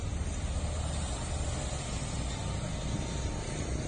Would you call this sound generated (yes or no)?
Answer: no